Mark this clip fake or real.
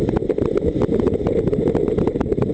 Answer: real